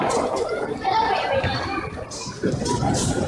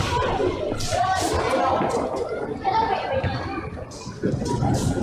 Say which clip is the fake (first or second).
first